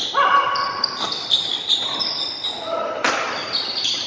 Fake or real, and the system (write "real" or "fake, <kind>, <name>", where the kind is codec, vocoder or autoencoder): fake, vocoder, BigVGAN v2